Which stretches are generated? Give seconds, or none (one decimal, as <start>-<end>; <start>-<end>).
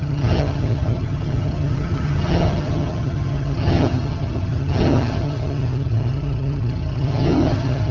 0.0-7.9